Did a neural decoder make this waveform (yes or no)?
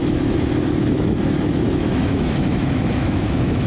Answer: yes